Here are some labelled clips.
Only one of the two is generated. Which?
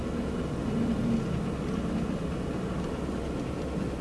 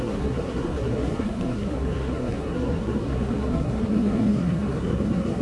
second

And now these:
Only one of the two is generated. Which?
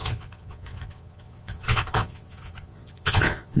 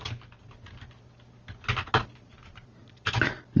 first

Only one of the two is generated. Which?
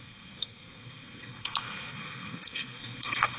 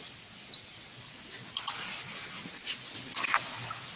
first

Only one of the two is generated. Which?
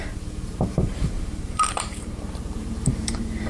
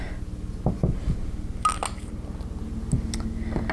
first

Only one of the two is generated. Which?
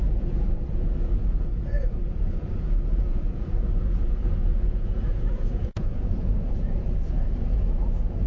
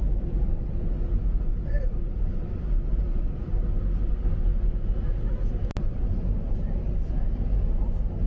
first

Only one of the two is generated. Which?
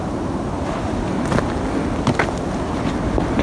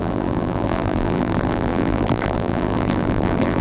second